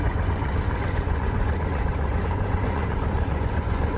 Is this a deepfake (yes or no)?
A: yes